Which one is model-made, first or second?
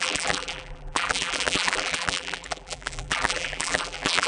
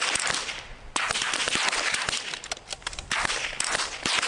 first